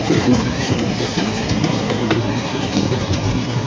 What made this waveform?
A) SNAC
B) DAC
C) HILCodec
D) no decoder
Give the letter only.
A